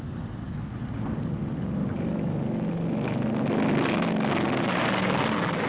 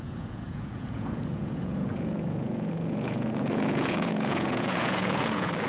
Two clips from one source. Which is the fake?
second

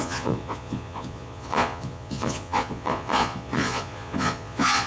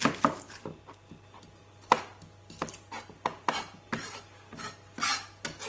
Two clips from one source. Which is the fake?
first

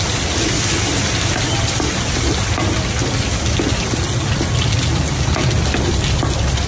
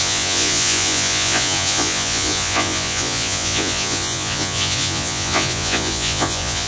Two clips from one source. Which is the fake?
second